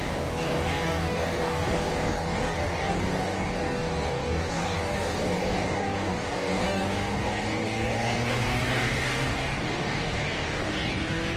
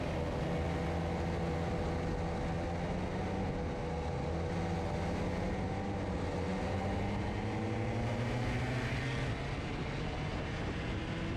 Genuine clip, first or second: second